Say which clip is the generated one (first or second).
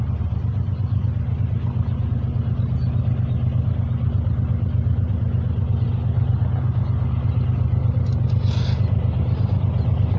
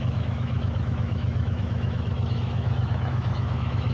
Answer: second